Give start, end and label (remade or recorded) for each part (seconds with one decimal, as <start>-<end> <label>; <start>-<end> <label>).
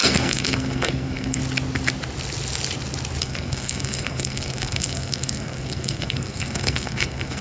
0.0-1.4 remade; 1.4-3.2 recorded; 3.2-7.4 remade